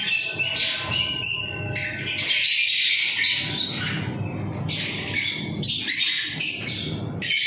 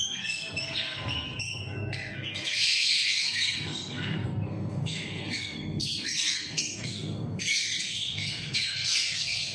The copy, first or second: second